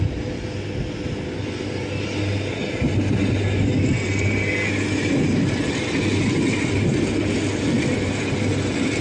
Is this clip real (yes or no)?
yes